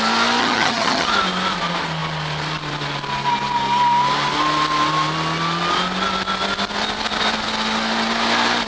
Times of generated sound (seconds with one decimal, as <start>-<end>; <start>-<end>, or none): 0.4-1.1